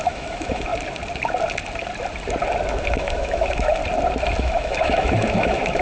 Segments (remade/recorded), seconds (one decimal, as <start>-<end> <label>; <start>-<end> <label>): 0.0-0.7 remade; 0.7-2.7 recorded; 2.7-3.8 remade; 3.8-4.4 recorded; 4.4-5.8 remade